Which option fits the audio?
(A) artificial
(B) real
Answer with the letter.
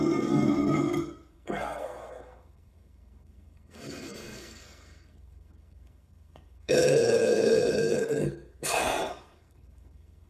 A